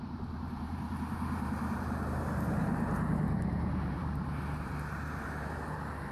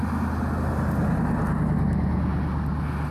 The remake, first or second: first